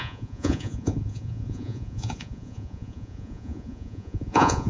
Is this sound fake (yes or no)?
yes